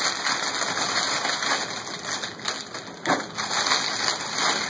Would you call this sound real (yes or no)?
yes